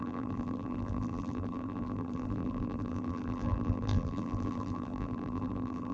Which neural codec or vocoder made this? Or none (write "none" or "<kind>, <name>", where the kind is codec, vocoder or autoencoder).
vocoder, BigVGAN v2